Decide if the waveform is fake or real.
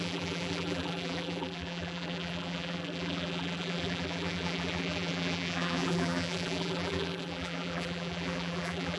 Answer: fake